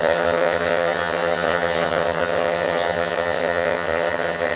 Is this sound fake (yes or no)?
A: yes